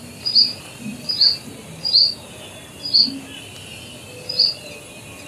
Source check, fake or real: real